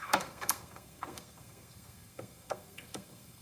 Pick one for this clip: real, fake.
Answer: fake